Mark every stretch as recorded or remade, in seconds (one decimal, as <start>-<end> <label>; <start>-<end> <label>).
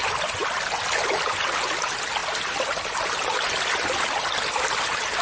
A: 0.0-5.2 recorded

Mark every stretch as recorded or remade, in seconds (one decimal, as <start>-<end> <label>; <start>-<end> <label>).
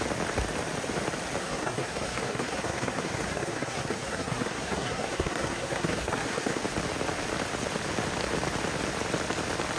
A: 0.0-1.4 recorded; 1.4-6.6 remade; 6.6-9.8 recorded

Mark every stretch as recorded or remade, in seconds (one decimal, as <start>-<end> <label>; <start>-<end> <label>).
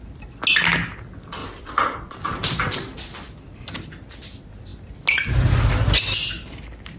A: 0.0-1.4 recorded; 1.4-2.1 remade; 2.1-7.0 recorded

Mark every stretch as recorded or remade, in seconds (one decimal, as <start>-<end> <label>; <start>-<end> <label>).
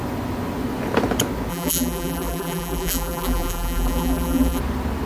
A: 0.0-1.5 recorded; 1.5-4.6 remade; 4.6-5.1 recorded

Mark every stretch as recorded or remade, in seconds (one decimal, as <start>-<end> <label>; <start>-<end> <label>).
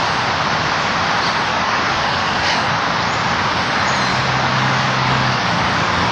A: 0.0-1.5 recorded; 1.5-2.7 remade; 2.7-4.1 recorded; 4.1-6.1 remade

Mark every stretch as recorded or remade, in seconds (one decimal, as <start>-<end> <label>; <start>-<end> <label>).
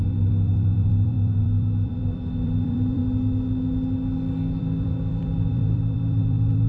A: 0.0-3.0 remade; 3.0-4.6 recorded; 4.6-6.7 remade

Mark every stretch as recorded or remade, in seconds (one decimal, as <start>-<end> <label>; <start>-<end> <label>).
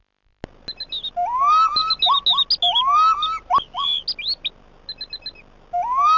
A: 0.0-6.2 recorded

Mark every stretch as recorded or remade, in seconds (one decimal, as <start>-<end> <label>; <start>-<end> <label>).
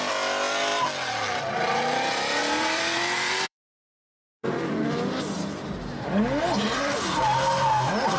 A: 0.0-2.4 recorded; 2.4-4.8 remade; 4.8-8.2 recorded